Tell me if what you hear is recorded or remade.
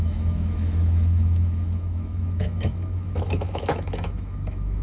remade